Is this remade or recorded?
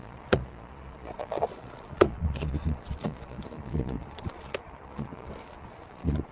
remade